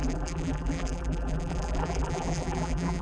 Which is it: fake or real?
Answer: fake